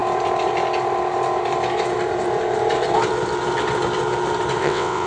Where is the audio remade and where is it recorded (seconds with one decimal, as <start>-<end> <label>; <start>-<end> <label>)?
0.0-4.6 recorded; 4.6-5.1 remade